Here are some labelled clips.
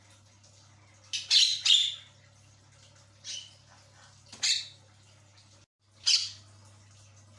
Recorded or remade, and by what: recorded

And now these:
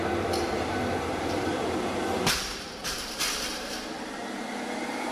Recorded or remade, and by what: remade, vocoder, BigVGAN v2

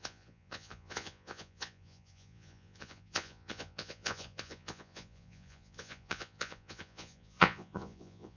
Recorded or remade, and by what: remade, vocoder, Vocos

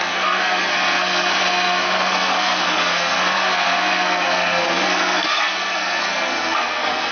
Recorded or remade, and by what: remade, codec, SNAC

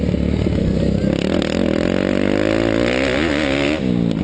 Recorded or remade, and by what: recorded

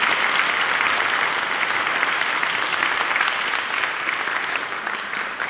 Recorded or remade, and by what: recorded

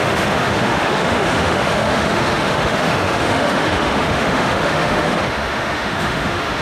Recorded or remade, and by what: remade, autoencoder, DAC-VAE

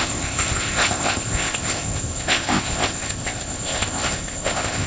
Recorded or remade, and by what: remade, codec, ZipCodec